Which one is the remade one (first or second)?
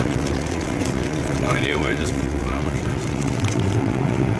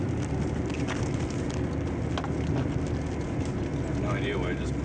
first